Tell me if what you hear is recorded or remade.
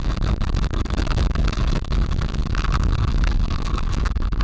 remade